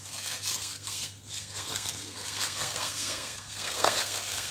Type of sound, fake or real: fake